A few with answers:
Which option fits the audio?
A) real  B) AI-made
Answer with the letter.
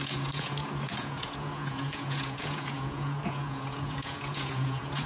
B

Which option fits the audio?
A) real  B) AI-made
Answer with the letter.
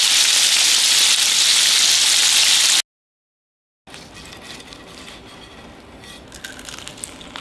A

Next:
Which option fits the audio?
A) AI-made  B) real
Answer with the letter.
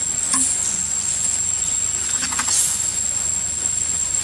A